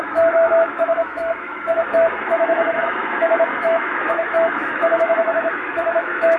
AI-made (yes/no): yes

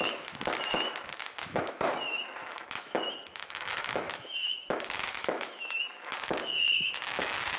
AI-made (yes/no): yes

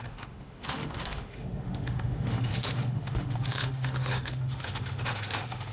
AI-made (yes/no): yes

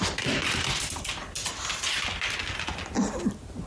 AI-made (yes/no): no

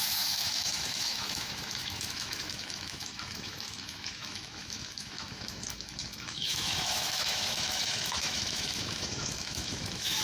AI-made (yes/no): yes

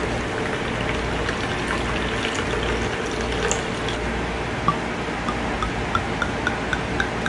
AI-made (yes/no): no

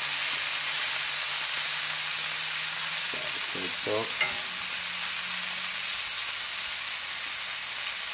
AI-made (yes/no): no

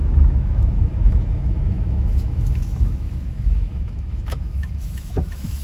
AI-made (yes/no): yes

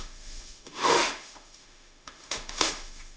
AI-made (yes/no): yes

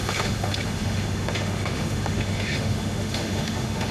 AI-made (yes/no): yes